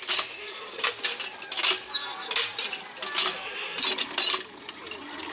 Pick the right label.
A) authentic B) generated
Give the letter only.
A